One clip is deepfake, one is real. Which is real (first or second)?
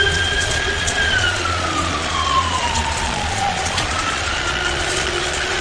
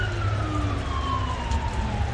second